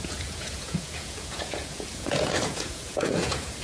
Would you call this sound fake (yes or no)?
yes